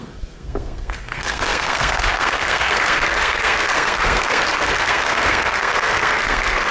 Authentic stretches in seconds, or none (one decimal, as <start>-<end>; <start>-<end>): none